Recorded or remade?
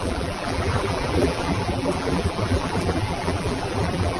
remade